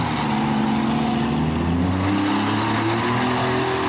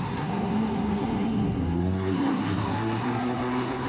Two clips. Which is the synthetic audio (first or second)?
second